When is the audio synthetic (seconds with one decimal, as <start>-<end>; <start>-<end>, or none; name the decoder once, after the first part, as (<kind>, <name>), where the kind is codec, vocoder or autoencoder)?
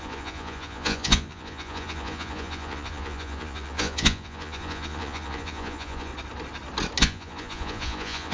0.0-6.1 (vocoder, Vocos); 7.0-8.3